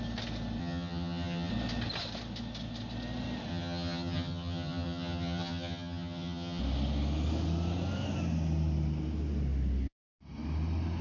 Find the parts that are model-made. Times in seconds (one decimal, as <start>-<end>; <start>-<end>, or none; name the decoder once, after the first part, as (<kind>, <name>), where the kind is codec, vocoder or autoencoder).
0.6-1.5 (vocoder, HiFi-GAN); 3.5-6.6